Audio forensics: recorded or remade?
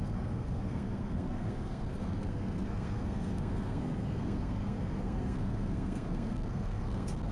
remade